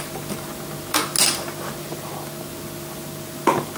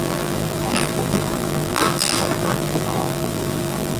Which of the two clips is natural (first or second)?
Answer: first